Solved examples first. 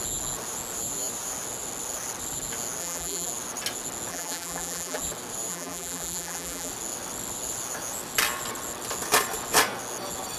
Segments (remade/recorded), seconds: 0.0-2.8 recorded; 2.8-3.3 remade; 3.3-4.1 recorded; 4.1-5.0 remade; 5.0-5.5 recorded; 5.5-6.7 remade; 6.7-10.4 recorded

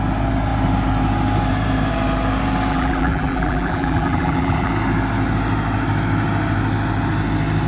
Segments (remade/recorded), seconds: 0.0-2.7 recorded; 2.7-4.7 remade; 4.7-7.7 recorded

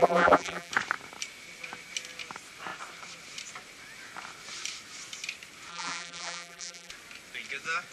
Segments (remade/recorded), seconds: 0.0-0.7 remade; 0.7-5.7 recorded; 5.7-6.9 remade; 6.9-7.9 recorded

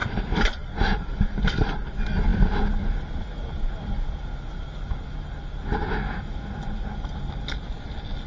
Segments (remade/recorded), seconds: 0.0-1.7 remade; 1.7-8.3 recorded

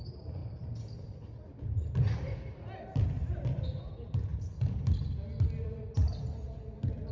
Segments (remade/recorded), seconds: 0.0-7.1 recorded